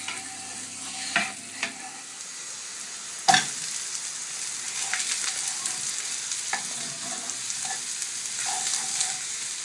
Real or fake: real